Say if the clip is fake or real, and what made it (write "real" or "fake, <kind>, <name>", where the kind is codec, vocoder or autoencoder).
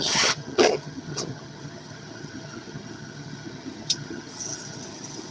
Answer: fake, vocoder, HiFi-GAN